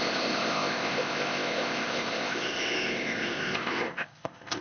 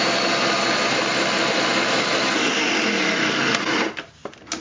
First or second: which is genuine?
second